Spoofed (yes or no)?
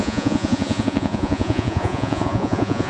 yes